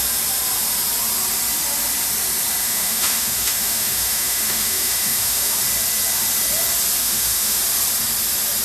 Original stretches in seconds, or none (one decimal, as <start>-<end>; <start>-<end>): 0.0-2.6; 5.6-7.0; 7.6-8.6